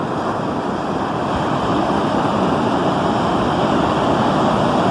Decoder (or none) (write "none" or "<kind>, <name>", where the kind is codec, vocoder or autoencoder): none